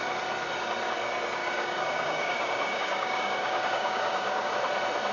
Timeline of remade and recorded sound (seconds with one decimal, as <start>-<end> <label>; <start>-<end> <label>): 0.0-1.4 recorded; 1.4-4.5 remade; 4.5-5.1 recorded